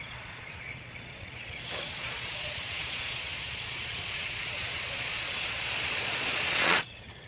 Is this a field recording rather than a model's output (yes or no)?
no